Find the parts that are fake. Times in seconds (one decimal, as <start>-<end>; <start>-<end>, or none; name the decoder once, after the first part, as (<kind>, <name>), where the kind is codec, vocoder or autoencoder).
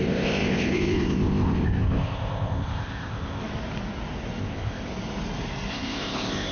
0.0-3.4 (codec, ZipCodec); 4.4-4.9; 5.7-6.5